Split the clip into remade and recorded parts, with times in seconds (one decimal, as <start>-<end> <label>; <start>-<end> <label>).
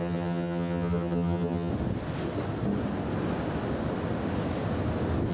0.0-1.7 remade; 1.7-5.3 recorded